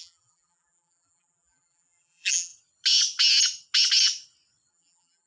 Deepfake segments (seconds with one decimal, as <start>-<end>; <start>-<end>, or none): 0.0-2.5; 4.7-5.3